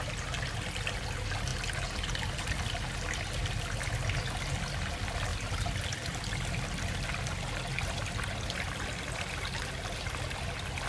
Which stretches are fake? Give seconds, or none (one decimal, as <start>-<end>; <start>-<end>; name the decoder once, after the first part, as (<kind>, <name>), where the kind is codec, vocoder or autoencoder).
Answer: 5.3-6.2 (vocoder, BigVGAN v2)